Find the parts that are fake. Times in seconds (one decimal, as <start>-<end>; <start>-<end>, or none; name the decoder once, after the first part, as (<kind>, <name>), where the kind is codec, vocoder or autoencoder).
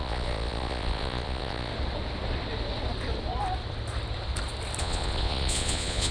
0.0-1.7 (vocoder, Vocos); 4.8-6.1